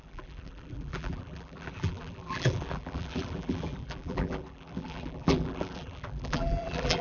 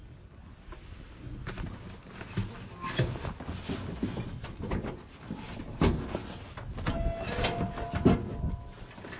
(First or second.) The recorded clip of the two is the second